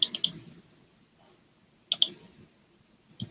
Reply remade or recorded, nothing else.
recorded